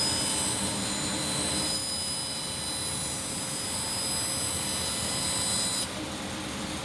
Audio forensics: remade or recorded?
recorded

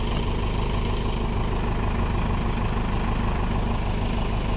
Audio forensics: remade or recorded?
recorded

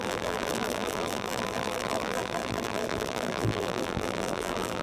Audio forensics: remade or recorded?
remade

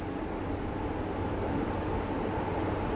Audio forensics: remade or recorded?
recorded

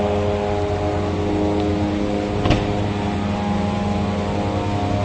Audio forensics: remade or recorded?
recorded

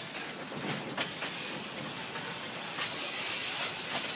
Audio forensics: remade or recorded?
recorded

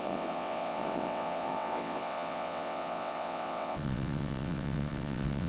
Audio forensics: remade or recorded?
remade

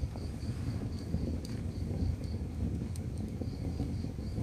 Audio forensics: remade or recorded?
remade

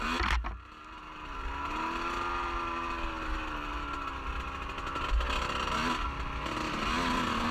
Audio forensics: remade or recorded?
recorded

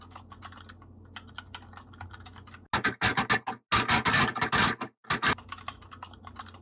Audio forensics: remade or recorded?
recorded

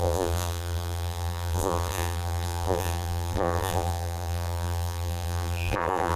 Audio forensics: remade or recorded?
remade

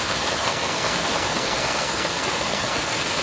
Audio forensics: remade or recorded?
remade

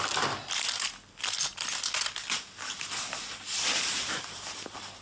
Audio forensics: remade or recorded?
recorded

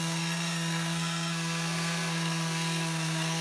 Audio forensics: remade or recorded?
remade